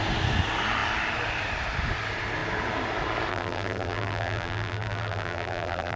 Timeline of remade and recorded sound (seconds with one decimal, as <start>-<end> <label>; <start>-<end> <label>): 0.0-3.3 recorded; 3.3-6.0 remade